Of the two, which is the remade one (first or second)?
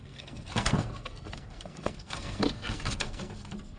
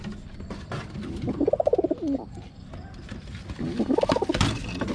first